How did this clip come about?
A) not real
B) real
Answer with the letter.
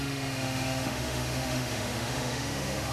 A